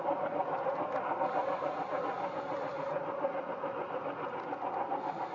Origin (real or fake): real